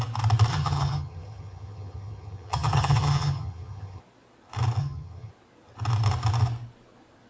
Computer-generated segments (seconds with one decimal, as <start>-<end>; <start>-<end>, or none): 0.5-4.0; 4.8-5.3